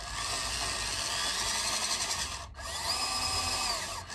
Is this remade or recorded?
recorded